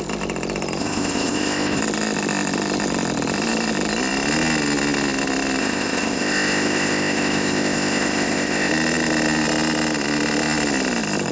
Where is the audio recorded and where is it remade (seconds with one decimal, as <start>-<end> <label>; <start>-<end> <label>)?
0.0-0.8 recorded; 0.8-1.8 remade; 1.8-5.6 recorded; 5.6-8.7 remade; 8.7-11.3 recorded